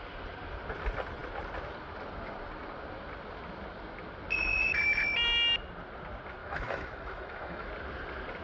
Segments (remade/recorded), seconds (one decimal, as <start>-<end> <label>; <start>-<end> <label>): 0.0-6.4 recorded; 6.4-7.7 remade; 7.7-8.4 recorded